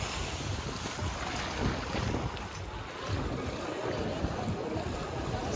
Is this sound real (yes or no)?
yes